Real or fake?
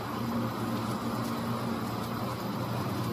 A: real